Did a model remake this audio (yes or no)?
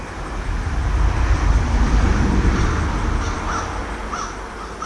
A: no